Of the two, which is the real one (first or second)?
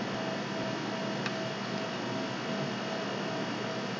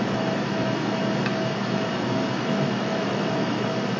first